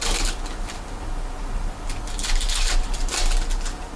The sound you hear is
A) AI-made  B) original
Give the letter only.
B